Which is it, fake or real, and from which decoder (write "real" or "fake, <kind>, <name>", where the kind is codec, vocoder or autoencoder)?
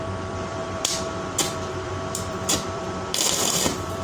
fake, vocoder, BigVGAN v2